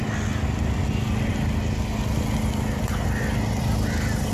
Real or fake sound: real